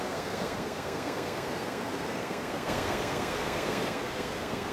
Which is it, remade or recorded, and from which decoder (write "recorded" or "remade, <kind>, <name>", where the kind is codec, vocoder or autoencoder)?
remade, codec, SNAC